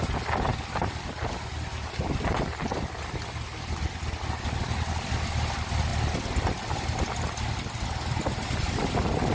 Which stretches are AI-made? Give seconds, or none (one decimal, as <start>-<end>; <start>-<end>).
none